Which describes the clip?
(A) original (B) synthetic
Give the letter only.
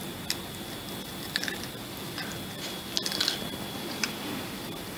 A